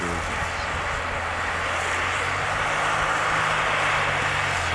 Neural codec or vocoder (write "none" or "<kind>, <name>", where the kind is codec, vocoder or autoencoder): none